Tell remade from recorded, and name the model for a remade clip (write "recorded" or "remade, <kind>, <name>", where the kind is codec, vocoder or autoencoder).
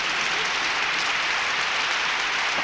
recorded